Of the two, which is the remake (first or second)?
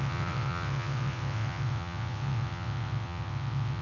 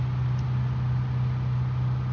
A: first